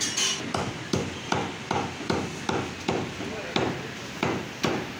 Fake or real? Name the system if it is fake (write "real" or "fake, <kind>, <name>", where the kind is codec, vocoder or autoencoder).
real